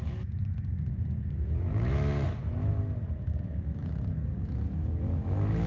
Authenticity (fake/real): fake